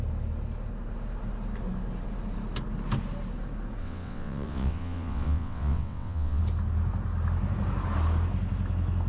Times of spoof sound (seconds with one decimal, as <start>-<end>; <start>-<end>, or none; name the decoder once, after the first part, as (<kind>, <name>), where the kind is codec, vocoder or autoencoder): 3.8-6.4 (vocoder, WaveNeXt)